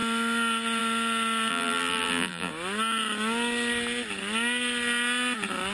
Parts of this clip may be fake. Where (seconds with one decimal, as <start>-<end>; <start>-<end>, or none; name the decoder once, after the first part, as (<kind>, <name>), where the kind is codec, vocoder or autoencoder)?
1.5-2.5 (vocoder, BigVGAN v2)